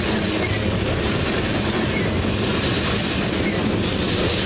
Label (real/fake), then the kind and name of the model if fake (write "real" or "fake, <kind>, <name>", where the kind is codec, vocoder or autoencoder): real